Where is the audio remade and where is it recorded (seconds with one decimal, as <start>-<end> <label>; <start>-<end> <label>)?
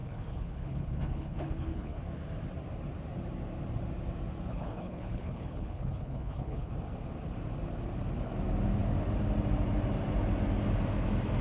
0.0-2.0 remade; 2.0-4.5 recorded; 4.5-6.7 remade; 6.7-11.4 recorded